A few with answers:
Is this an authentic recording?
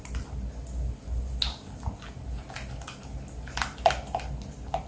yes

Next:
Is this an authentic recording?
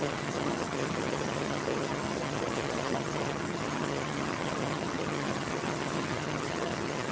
no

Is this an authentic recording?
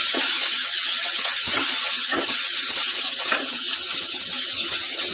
no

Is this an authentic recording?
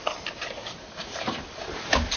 yes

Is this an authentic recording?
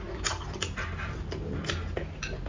yes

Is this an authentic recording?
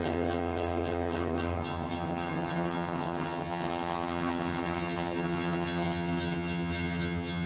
no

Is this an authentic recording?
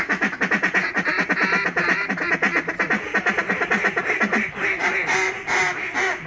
yes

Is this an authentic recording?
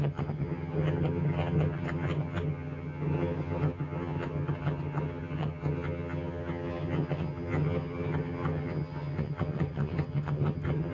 no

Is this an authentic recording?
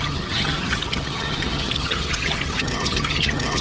no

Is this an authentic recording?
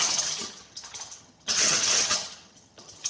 no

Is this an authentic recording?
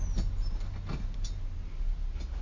yes